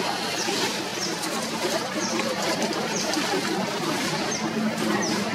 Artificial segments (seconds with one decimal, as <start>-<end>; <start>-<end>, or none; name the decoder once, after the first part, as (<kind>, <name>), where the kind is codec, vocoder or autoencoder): 0.9-4.1 (vocoder, BigVGAN v2)